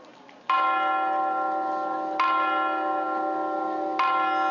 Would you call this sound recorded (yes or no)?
yes